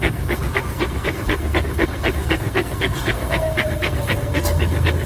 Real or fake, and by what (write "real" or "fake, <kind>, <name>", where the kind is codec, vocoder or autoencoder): fake, codec, SNAC